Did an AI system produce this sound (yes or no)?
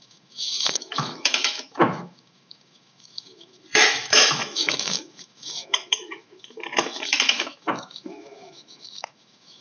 yes